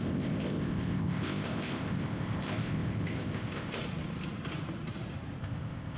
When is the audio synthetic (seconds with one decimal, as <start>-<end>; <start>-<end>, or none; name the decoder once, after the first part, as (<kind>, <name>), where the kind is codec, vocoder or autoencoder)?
0.0-3.8 (codec, ZipCodec); 5.4-6.0